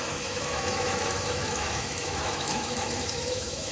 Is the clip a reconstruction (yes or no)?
yes